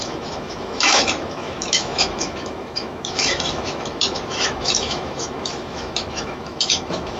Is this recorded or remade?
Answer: remade